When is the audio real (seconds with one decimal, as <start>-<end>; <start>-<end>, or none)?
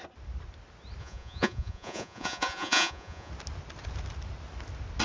0.0-1.0; 3.3-5.0